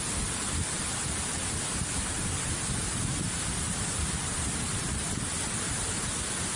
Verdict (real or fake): fake